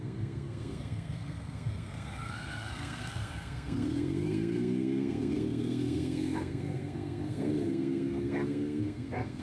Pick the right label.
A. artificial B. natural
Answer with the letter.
A